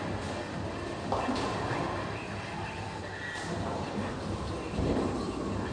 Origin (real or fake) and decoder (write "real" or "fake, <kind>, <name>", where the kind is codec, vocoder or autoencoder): real